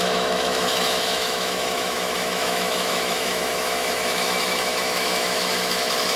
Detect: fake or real fake